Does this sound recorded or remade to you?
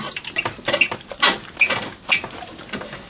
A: recorded